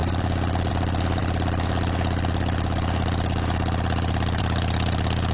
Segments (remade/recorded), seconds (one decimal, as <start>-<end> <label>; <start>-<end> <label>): 0.0-5.3 recorded